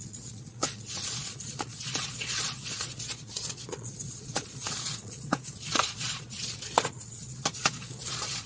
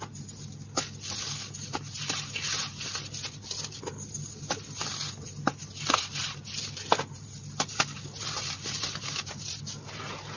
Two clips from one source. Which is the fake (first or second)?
first